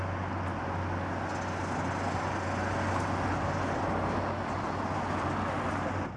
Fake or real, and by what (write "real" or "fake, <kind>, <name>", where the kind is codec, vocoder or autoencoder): real